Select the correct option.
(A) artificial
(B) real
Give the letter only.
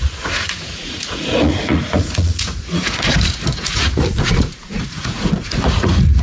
A